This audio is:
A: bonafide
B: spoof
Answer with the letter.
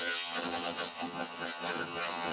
B